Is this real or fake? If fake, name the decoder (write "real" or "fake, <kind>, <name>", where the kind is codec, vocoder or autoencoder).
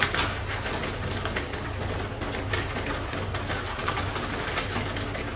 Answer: real